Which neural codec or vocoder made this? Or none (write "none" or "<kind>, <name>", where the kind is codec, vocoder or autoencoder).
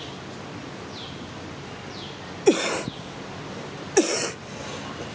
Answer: none